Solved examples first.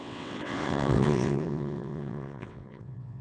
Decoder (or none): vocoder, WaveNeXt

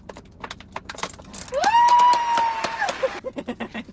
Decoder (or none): none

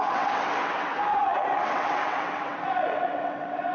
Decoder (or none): vocoder, WaveNeXt